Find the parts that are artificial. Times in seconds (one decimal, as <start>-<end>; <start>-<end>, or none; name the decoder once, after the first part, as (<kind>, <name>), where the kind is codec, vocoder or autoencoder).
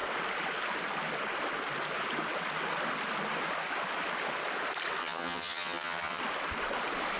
5.0-6.2 (vocoder, HiFi-GAN)